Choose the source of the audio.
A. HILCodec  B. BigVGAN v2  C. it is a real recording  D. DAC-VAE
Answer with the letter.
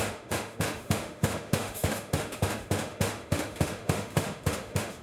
D